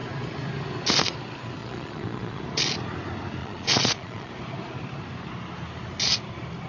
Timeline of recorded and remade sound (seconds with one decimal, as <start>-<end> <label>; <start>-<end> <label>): 0.0-1.6 recorded; 1.6-2.4 remade; 2.4-3.4 recorded; 3.4-4.3 remade; 4.3-6.7 recorded